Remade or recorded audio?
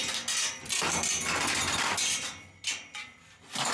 recorded